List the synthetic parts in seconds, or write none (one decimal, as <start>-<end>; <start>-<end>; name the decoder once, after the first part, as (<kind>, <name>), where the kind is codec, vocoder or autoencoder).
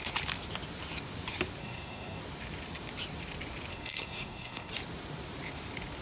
1.6-2.2 (codec, SNAC); 3.7-4.7